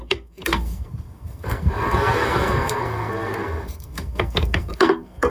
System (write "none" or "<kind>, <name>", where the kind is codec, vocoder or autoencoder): codec, SNAC